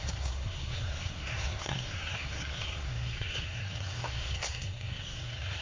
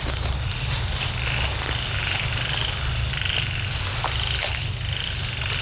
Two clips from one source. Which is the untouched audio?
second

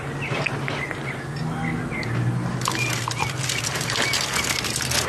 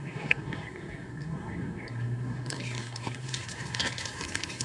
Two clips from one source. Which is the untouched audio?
first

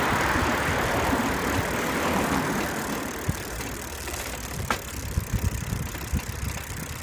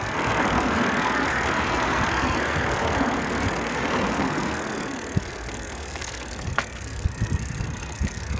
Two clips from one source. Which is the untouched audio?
first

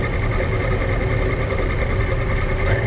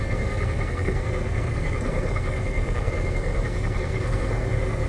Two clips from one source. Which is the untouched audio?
first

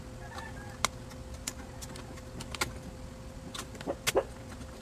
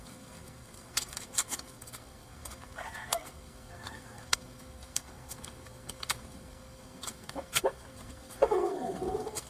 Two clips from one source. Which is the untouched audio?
first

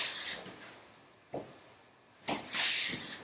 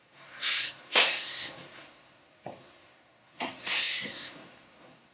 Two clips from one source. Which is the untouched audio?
first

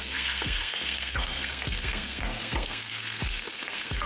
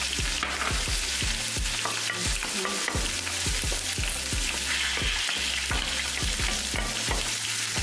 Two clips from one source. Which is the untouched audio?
second